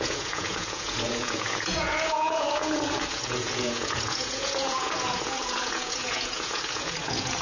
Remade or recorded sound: remade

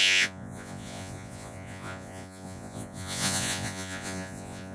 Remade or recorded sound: remade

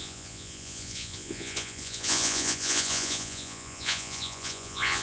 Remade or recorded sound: remade